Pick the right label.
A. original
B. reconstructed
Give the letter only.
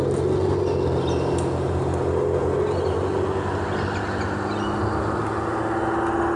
A